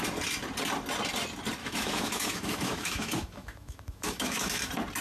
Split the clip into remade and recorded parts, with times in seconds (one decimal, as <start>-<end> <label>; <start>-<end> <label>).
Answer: 0.0-1.6 recorded; 1.6-4.6 remade; 4.6-5.0 recorded